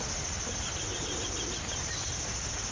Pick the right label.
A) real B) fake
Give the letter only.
A